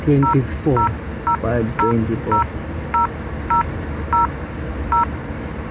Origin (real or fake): real